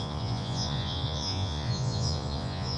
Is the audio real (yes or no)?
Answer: no